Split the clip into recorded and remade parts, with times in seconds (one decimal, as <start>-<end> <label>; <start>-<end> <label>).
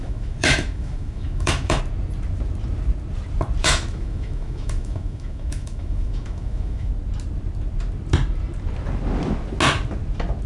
0.0-1.8 remade; 1.8-3.6 recorded; 3.6-6.9 remade; 6.9-10.5 recorded